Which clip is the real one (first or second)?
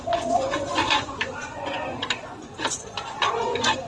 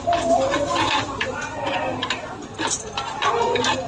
second